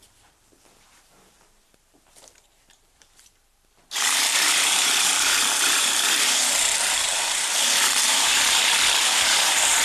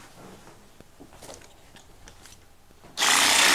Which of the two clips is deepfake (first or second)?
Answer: first